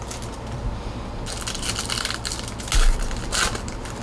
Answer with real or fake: real